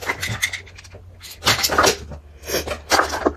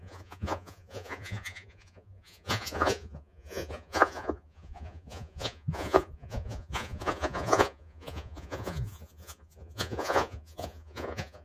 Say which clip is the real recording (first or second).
first